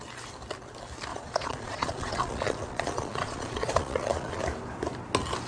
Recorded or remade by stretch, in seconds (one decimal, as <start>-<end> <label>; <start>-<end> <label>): 0.0-1.1 recorded; 1.1-4.4 remade; 4.4-5.5 recorded